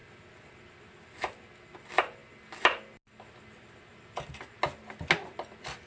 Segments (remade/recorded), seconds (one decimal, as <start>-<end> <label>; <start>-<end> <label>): 0.0-5.9 recorded